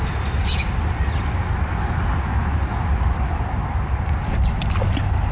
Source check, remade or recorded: recorded